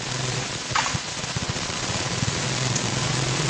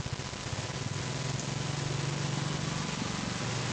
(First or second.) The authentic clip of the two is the second